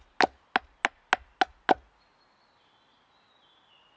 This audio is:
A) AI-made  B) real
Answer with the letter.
B